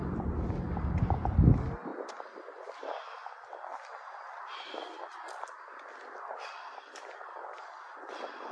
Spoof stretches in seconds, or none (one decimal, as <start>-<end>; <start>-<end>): none